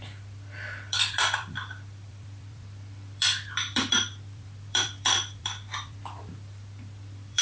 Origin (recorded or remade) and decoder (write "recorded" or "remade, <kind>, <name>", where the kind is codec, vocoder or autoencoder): remade, vocoder, BigVGAN v2